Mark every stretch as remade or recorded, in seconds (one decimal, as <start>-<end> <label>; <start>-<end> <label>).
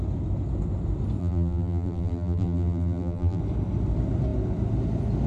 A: 0.0-1.2 recorded; 1.2-3.4 remade; 3.4-5.3 recorded